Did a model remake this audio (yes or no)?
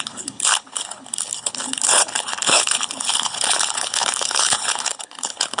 yes